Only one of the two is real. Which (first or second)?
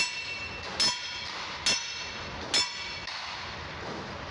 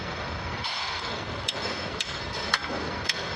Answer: first